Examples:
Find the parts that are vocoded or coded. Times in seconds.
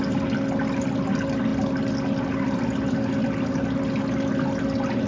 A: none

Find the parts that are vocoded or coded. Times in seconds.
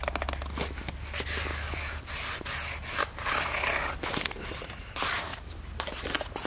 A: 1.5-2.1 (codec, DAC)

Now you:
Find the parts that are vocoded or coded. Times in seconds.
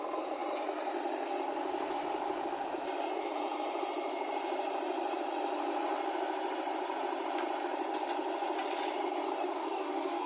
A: 9.3-10.3 (codec, DAC)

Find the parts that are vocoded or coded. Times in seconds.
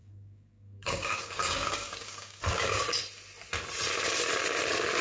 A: 0.0-3.0 (codec, DAC)